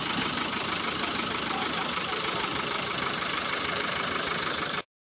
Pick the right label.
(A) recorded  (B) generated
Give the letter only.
B